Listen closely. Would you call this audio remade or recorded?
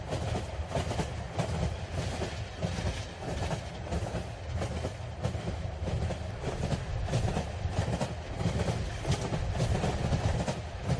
recorded